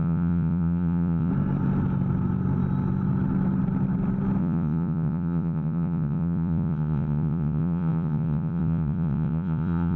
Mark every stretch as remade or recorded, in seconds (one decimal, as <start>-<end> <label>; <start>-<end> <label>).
0.0-1.3 remade; 1.3-4.4 recorded; 4.4-10.0 remade